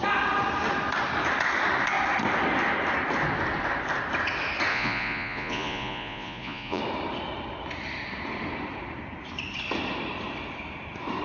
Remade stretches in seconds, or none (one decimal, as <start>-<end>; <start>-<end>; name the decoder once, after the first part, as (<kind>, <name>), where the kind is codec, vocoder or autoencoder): 4.7-6.8 (vocoder, Vocos)